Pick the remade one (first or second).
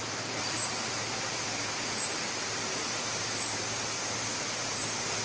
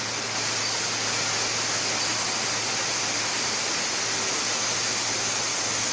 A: first